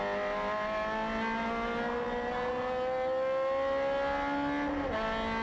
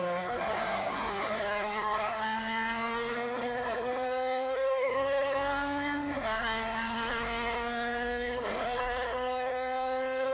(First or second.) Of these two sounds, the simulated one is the second